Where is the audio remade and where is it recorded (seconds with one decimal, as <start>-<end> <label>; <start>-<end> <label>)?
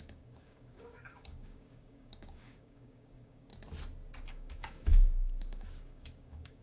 0.0-3.5 remade; 3.5-4.3 recorded; 4.3-6.6 remade